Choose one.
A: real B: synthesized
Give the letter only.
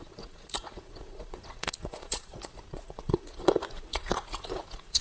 B